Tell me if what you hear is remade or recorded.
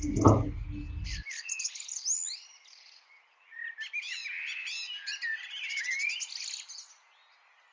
recorded